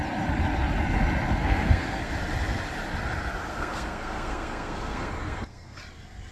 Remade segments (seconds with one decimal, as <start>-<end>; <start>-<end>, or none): 1.4-2.1; 3.5-5.8

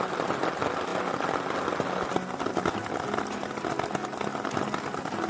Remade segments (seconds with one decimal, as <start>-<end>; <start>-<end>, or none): none

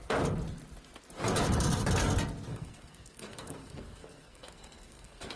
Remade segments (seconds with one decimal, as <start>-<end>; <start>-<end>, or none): 2.5-5.4

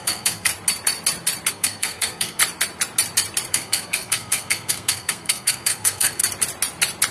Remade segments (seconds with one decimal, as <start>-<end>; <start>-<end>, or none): 0.0-0.5; 1.5-2.4; 3.5-6.2

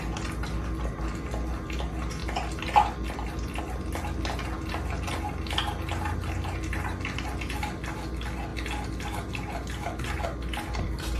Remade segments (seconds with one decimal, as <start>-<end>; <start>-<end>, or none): none

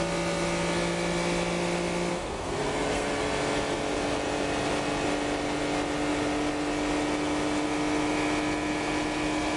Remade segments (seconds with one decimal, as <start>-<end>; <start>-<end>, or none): 2.1-3.2

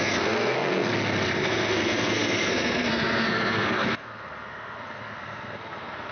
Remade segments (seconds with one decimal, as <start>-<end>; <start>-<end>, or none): 0.0-0.9; 1.4-6.1

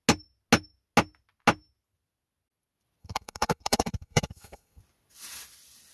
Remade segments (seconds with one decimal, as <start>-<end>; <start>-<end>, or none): 3.0-4.8